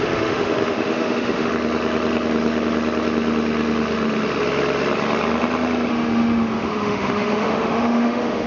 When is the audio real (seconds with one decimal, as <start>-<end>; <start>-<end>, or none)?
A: 1.5-5.9